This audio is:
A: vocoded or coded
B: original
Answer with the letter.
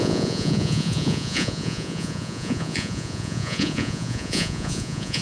A